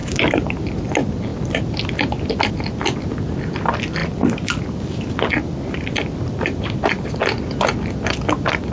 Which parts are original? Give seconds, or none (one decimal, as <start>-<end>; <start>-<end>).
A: 0.7-1.3; 2.5-4.0; 7.0-8.7